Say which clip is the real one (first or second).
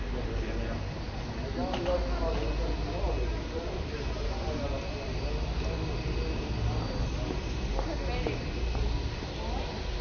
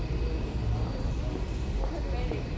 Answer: first